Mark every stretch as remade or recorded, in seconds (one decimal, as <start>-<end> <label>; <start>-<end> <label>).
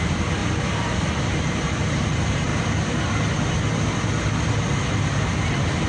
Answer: 0.0-0.4 remade; 0.4-1.1 recorded; 1.1-2.5 remade; 2.5-5.9 recorded